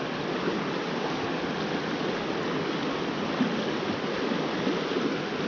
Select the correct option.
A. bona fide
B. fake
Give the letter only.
A